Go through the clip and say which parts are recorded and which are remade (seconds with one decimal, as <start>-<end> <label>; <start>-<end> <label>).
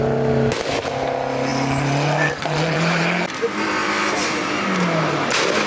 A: 0.0-5.7 recorded